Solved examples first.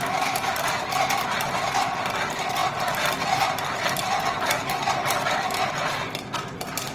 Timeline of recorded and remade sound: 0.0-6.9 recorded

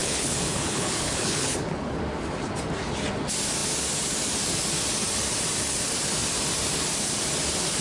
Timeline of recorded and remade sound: 0.0-2.0 remade; 2.0-7.8 recorded

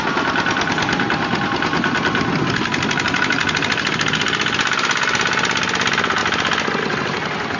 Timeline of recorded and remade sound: 0.0-7.6 recorded

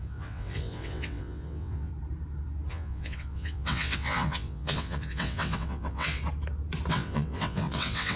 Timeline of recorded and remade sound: 0.0-1.9 remade; 1.9-2.7 recorded; 2.7-6.2 remade; 6.2-6.9 recorded; 6.9-8.2 remade

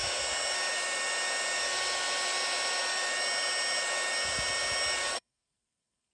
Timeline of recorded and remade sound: 0.0-5.1 recorded; 5.1-6.1 remade

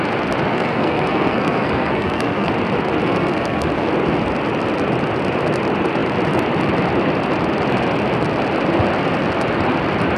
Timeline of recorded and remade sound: 0.0-0.5 recorded; 0.5-2.5 remade; 2.5-3.0 recorded; 3.0-3.9 remade; 3.9-10.2 recorded

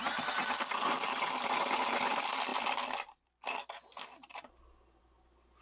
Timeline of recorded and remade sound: 0.0-5.6 recorded